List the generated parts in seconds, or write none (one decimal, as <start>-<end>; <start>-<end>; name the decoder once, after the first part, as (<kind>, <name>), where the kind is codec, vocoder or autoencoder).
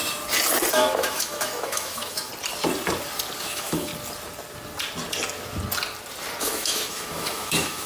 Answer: 0.7-2.3 (autoencoder, DAC-VAE); 3.4-3.9; 6.4-7.9